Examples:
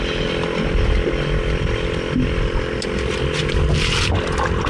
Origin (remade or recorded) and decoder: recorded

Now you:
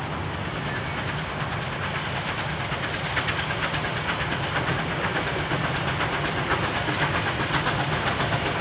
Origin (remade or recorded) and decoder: recorded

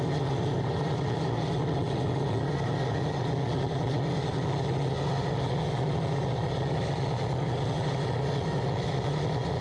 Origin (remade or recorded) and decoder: recorded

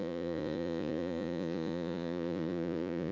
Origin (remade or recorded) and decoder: remade, vocoder, Vocos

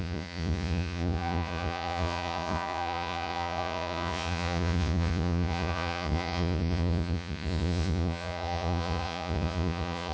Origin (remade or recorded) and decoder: remade, vocoder, Vocos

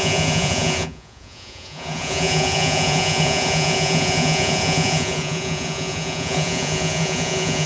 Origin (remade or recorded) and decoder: remade, vocoder, Vocos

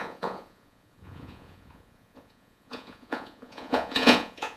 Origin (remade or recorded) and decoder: remade, vocoder, Vocos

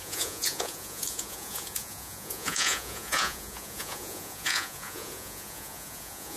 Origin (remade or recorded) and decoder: remade, vocoder, Vocos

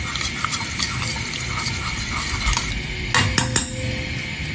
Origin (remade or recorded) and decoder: recorded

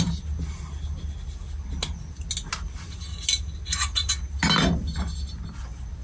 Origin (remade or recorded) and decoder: recorded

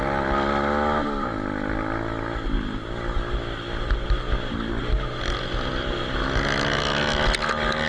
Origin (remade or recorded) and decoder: recorded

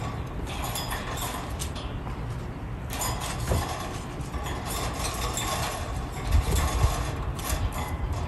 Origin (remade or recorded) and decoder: recorded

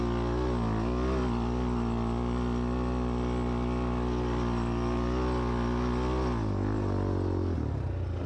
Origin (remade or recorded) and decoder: recorded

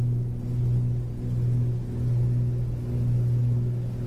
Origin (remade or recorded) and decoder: recorded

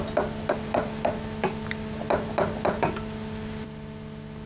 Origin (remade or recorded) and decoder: recorded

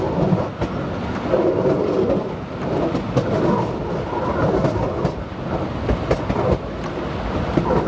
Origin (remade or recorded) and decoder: recorded